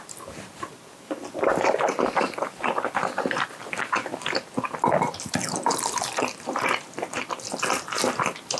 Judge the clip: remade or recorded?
recorded